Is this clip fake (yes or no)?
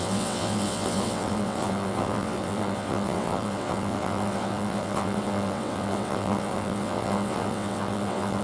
yes